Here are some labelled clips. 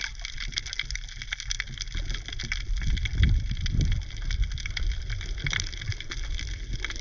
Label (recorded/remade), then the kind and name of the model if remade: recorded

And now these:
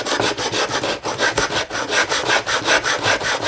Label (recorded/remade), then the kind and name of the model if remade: recorded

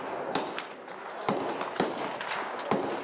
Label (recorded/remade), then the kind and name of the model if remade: recorded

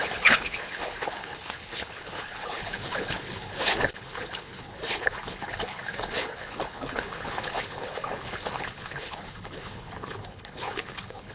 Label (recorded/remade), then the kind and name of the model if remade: remade, codec, HILCodec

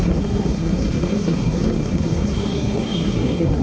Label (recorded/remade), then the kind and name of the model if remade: remade, codec, SNAC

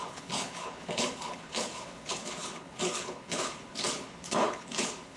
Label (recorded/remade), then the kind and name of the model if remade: remade, codec, HILCodec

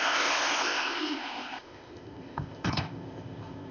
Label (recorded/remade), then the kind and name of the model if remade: remade, codec, ZipCodec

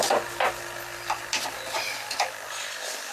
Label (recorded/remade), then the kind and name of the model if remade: recorded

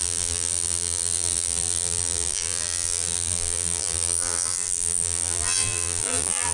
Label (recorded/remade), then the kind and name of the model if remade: remade, vocoder, BigVGAN v2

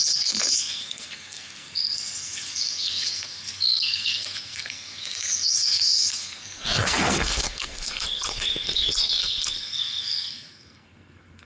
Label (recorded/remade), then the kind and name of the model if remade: remade, codec, SNAC